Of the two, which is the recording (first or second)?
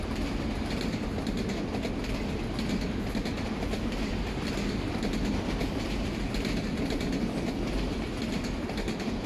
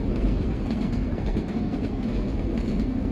first